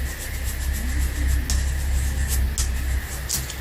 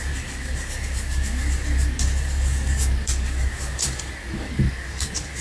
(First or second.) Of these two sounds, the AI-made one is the second